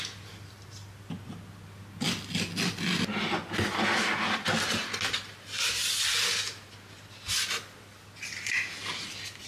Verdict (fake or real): real